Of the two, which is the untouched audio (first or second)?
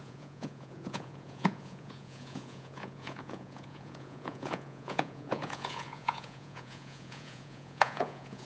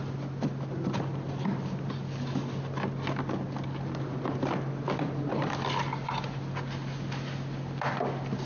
second